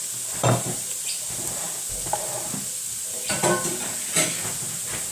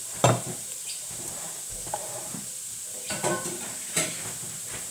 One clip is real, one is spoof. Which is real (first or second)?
first